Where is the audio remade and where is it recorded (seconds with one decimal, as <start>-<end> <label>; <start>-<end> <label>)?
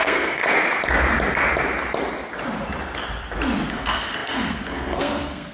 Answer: 0.0-0.4 remade; 0.4-3.7 recorded; 3.7-5.5 remade